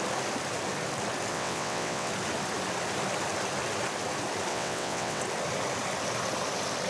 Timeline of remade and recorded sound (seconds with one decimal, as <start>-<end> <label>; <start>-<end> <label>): 0.0-1.3 recorded; 1.3-2.1 remade; 2.1-4.5 recorded; 4.5-5.2 remade; 5.2-6.9 recorded